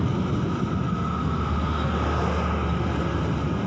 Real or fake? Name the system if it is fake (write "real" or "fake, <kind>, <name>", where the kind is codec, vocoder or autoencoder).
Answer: real